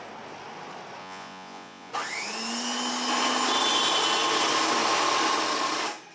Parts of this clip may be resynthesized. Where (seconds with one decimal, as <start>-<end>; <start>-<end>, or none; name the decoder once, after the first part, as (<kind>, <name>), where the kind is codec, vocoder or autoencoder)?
1.0-1.9 (vocoder, Vocos)